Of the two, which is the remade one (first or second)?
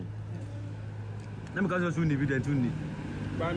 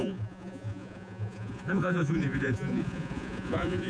second